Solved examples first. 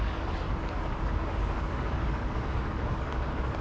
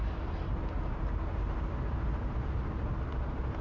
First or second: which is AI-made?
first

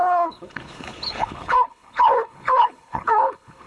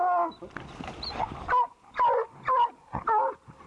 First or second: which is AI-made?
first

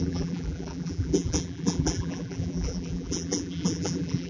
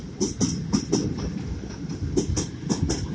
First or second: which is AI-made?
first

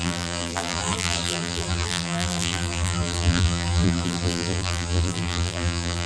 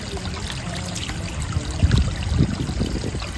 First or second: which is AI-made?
first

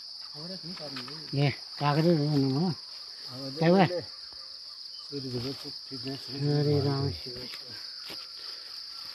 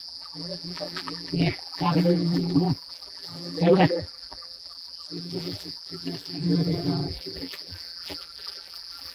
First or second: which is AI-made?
second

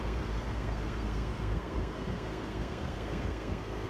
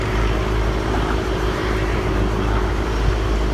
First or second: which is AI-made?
first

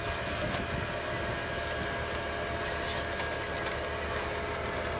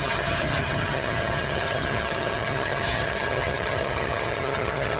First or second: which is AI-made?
second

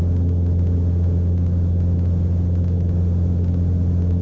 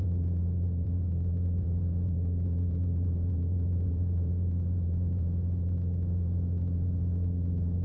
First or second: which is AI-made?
second